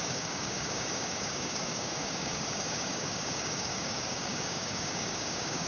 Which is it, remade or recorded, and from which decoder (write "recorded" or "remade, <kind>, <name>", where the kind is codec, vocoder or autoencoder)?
remade, codec, DAC